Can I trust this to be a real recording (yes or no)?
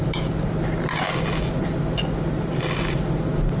yes